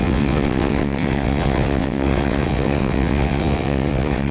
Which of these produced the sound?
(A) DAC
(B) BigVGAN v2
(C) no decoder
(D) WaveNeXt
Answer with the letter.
D